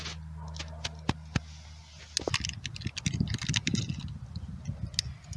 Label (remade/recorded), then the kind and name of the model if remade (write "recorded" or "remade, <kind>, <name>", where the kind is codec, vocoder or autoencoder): recorded